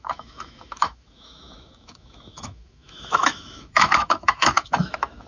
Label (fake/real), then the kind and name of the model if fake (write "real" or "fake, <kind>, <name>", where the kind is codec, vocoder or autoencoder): fake, autoencoder, DAC-VAE